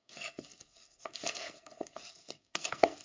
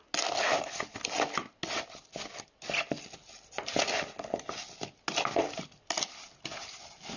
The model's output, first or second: first